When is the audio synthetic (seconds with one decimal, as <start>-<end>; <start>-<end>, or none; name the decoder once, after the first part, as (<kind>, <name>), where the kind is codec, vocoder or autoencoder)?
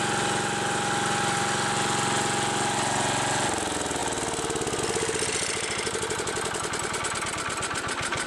none